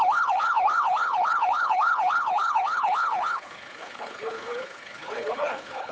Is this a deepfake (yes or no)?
yes